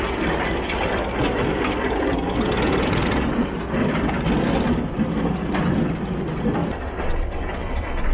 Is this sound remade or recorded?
recorded